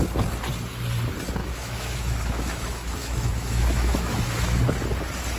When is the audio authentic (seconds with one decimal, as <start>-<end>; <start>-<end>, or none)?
0.0-1.4; 4.6-5.4